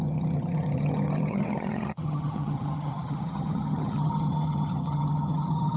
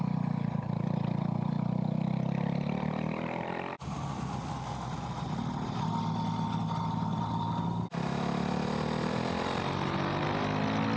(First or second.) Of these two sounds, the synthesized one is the first